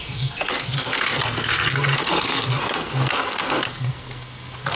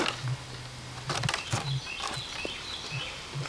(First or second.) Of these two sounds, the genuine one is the second